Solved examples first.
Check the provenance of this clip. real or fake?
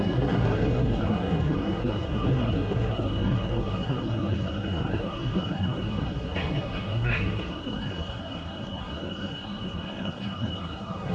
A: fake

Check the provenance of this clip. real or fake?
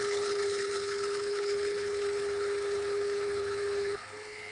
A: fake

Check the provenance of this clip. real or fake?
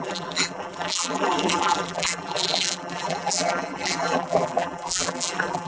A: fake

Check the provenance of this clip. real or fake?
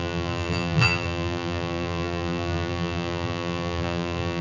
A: fake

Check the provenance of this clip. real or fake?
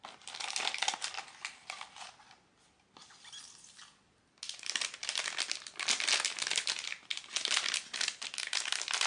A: real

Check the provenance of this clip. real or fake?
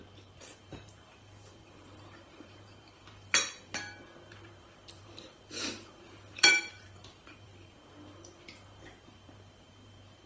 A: fake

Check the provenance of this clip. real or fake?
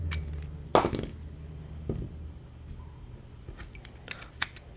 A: real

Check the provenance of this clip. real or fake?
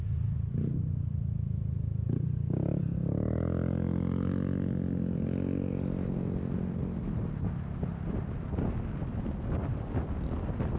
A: real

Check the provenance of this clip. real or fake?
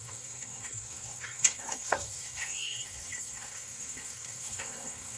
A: fake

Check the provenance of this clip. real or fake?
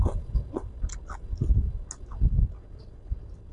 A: real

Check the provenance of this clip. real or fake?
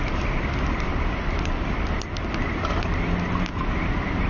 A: real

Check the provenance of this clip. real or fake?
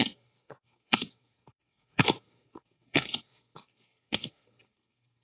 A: fake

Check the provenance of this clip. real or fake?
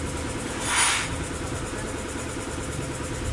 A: real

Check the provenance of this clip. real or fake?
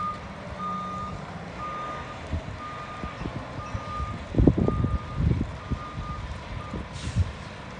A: real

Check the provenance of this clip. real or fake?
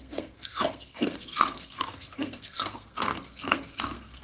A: fake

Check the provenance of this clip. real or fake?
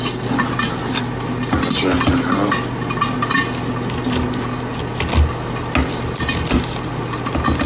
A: real